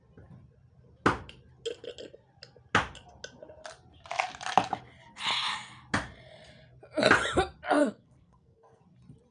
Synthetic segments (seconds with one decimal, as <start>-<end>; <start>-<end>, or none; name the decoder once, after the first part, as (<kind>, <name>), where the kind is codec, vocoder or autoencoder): 7.8-8.8 (codec, SNAC)